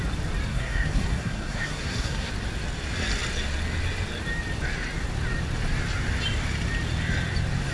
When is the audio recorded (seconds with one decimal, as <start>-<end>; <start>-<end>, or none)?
0.0-0.5; 2.3-7.7